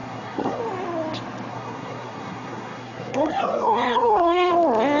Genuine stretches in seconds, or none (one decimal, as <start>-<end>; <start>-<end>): 0.6-1.5; 4.5-5.0